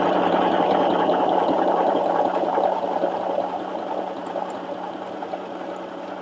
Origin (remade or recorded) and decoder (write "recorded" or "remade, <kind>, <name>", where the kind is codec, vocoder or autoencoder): remade, vocoder, BigVGAN v2